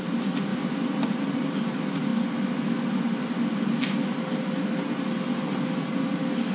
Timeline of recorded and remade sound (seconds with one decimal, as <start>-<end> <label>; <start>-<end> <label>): 0.0-0.5 recorded; 0.5-1.4 remade; 1.4-6.5 recorded